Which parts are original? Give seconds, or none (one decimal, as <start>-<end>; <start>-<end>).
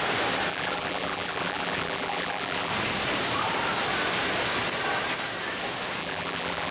0.0-0.5; 2.7-6.0